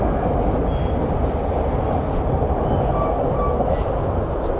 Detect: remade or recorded recorded